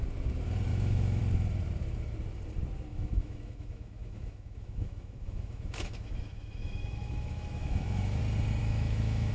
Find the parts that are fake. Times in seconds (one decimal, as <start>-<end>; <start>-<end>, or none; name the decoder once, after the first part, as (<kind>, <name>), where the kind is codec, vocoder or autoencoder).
0.7-1.2 (autoencoder, DAC-VAE); 2.9-8.2; 8.6-9.3